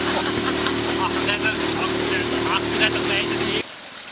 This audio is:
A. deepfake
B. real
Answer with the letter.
A